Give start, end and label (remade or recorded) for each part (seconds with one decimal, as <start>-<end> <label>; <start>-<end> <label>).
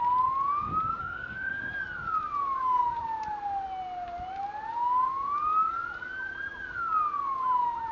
0.0-1.0 recorded; 1.0-1.7 remade; 1.7-7.9 recorded